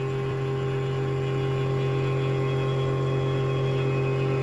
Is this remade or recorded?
recorded